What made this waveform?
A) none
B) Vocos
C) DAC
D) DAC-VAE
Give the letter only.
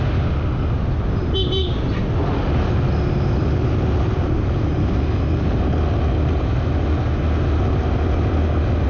A